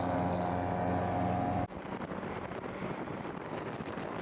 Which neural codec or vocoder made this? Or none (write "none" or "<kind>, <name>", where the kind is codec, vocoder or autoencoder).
none